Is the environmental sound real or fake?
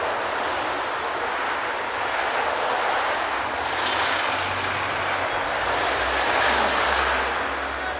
real